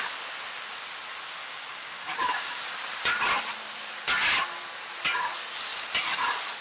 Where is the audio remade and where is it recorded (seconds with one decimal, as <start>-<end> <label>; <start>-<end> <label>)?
0.0-1.4 recorded; 1.4-2.6 remade; 2.6-6.6 recorded